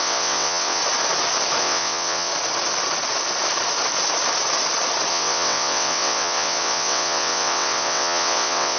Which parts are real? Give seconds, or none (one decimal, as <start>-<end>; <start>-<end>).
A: 0.8-1.6; 2.3-5.1